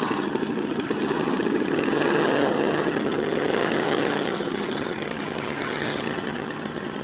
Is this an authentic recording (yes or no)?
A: no